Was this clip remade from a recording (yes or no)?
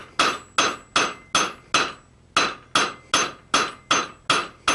no